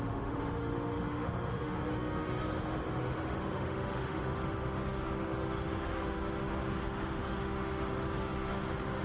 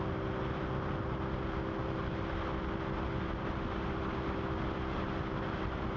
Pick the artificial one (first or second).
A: first